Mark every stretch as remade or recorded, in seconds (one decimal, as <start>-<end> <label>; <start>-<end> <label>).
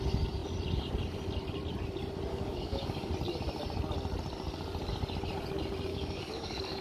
0.0-2.3 recorded; 2.3-3.1 remade; 3.1-5.9 recorded; 5.9-6.8 remade